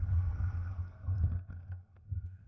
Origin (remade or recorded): remade